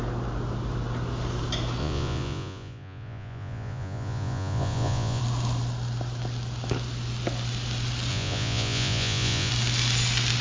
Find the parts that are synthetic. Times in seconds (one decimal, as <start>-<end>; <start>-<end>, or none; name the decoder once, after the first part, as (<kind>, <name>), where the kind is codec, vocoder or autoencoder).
1.8-5.2 (vocoder, Vocos); 8.1-9.5